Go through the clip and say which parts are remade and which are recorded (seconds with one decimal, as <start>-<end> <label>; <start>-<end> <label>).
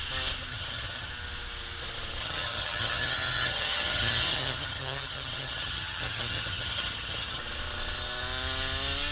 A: 0.0-0.5 recorded; 0.5-1.1 remade; 1.1-2.2 recorded; 2.2-7.4 remade; 7.4-9.1 recorded